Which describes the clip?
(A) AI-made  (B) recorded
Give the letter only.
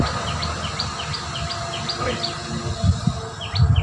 B